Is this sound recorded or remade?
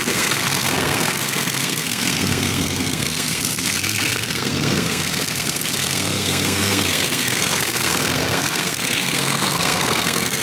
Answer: remade